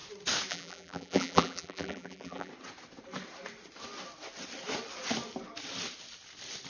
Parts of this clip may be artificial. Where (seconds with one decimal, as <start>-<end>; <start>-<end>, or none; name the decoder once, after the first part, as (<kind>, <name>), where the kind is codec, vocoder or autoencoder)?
0.5-2.5 (vocoder, BigVGAN v2)